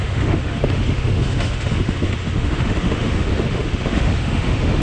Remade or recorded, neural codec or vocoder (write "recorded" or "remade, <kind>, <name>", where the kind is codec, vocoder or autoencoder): remade, autoencoder, DAC-VAE